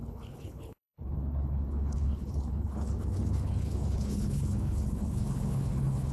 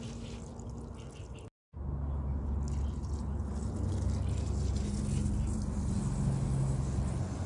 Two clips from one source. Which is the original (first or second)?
second